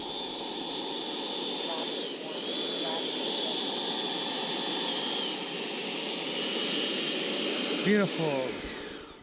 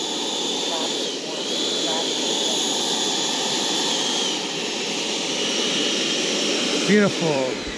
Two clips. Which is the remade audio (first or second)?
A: second